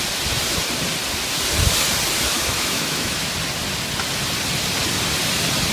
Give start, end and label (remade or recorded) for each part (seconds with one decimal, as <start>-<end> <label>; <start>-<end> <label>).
0.0-2.3 recorded; 2.3-3.3 remade; 3.3-5.7 recorded